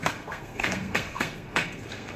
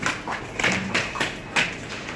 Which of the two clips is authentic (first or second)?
second